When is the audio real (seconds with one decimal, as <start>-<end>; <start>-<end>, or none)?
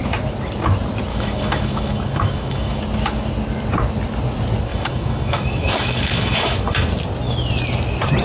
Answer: 0.0-1.1; 2.8-4.7; 6.8-8.2